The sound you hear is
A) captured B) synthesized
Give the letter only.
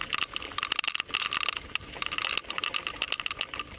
A